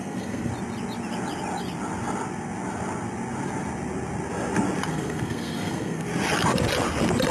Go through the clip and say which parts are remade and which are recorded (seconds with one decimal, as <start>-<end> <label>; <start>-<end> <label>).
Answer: 0.0-0.5 remade; 0.5-4.9 recorded; 4.9-6.1 remade; 6.1-7.3 recorded